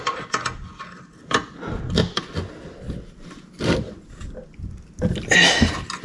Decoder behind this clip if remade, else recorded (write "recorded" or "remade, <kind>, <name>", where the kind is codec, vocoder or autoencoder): recorded